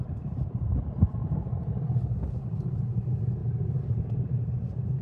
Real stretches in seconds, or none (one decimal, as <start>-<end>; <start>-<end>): 0.0-3.4